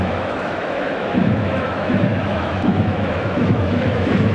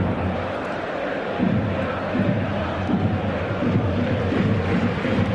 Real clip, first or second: second